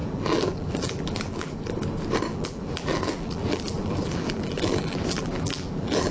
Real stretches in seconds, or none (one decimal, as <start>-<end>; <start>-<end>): 1.5-2.3